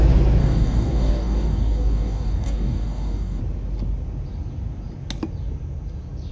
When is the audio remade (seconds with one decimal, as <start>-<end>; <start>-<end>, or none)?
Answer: 0.4-3.4

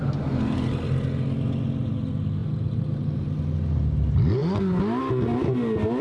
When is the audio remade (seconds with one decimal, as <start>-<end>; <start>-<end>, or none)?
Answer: 0.0-0.7; 2.4-3.4

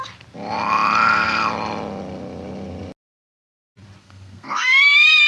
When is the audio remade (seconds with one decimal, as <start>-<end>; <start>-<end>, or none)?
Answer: 4.0-5.3

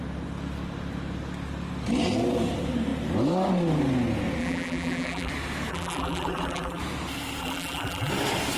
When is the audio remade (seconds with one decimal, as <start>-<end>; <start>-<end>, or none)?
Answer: 4.4-5.3; 5.7-6.8; 7.4-8.1

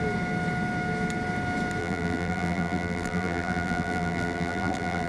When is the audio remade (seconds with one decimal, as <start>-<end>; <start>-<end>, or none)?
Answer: 1.8-5.1

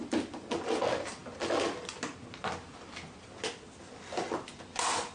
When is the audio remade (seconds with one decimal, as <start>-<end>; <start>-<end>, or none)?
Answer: none

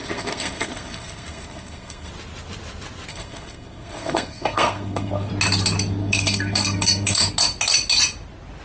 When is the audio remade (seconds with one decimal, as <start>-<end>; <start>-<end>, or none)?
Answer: 0.0-2.1; 3.1-5.3; 6.0-7.3

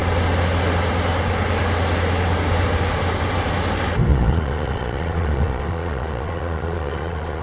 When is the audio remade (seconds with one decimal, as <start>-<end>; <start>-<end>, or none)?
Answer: 4.1-7.4